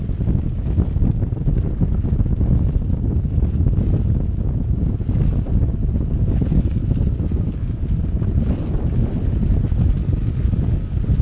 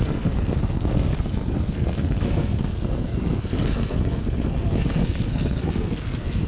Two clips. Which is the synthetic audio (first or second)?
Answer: second